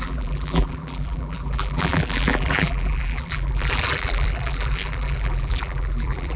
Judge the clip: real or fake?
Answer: fake